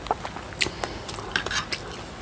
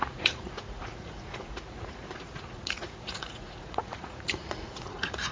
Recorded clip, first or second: first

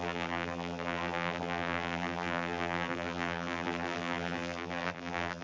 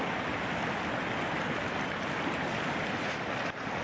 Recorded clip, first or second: second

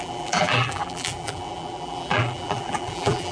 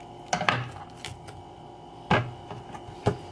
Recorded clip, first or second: second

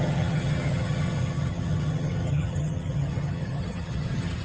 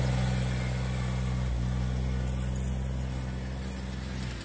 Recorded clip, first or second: second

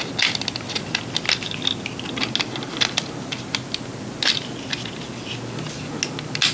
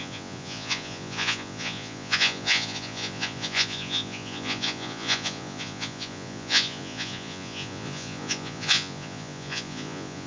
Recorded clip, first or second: first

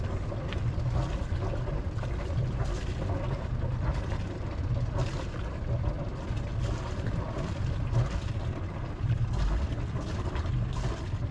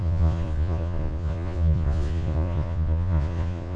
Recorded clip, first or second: first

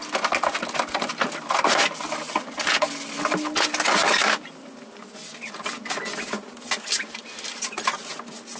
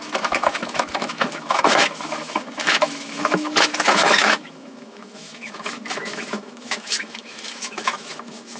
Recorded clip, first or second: first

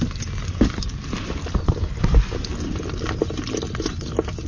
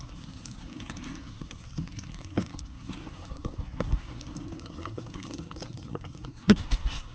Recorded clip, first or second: first